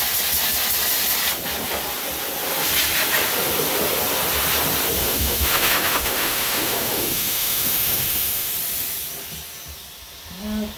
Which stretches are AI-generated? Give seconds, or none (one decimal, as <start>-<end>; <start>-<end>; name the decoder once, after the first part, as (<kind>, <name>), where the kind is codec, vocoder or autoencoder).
5.0-8.5 (autoencoder, DAC-VAE)